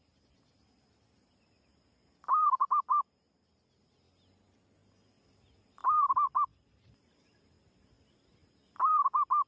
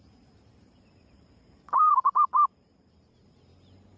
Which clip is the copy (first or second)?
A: second